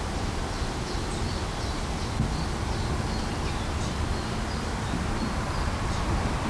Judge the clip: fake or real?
real